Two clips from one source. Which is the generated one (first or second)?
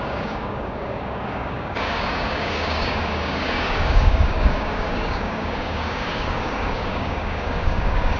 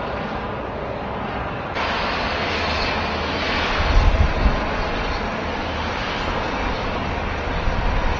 first